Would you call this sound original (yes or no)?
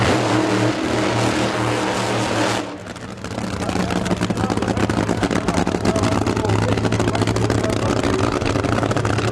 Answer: yes